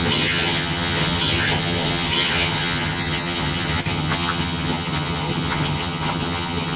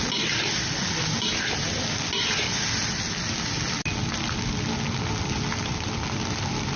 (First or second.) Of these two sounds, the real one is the second